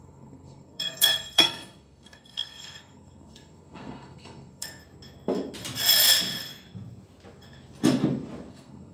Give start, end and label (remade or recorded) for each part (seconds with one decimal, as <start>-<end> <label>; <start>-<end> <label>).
0.0-4.8 remade; 4.8-8.5 recorded; 8.5-8.9 remade